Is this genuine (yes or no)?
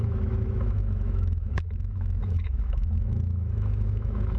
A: no